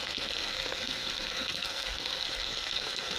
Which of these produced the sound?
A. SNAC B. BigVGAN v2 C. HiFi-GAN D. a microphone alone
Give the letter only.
A